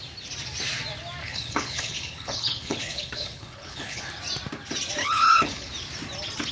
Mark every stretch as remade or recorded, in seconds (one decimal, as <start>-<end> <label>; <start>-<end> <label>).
0.0-1.2 recorded; 1.2-4.0 remade; 4.0-5.0 recorded; 5.0-5.7 remade; 5.7-6.5 recorded